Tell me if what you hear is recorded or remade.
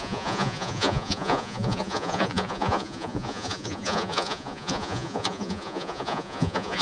remade